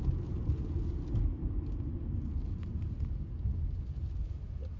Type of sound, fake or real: real